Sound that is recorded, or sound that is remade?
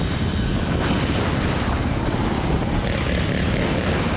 recorded